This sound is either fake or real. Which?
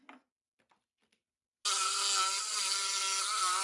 real